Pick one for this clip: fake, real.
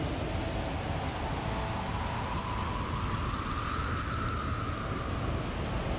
real